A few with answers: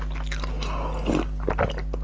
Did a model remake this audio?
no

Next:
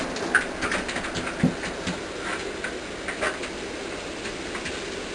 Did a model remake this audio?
no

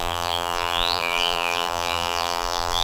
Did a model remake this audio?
yes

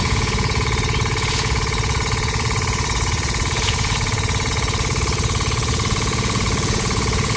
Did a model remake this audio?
yes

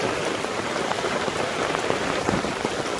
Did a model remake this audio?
no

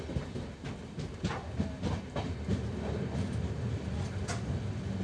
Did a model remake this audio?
no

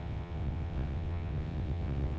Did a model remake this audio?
yes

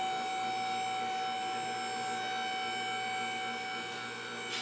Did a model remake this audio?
no